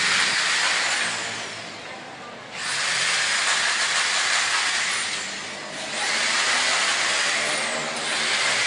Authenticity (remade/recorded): recorded